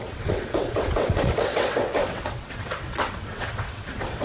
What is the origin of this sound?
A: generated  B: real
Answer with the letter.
A